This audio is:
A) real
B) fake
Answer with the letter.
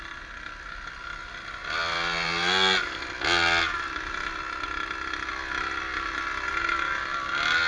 A